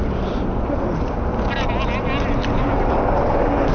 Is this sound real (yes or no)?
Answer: yes